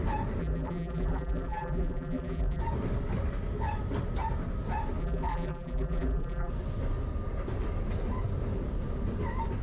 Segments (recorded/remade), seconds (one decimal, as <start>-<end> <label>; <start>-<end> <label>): 0.0-0.4 recorded; 0.4-2.6 remade; 2.6-5.0 recorded; 5.0-6.5 remade; 6.5-9.6 recorded